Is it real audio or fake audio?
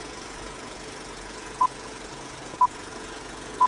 fake